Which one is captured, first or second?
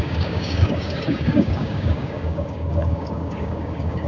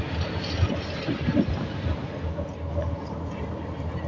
second